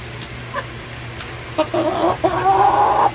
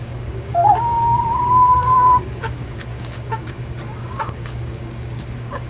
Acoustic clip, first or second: first